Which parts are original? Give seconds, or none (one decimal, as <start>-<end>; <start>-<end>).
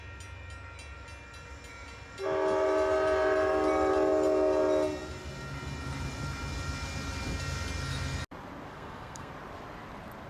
0.0-8.7; 9.3-10.3